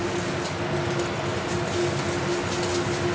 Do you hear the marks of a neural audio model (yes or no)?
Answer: no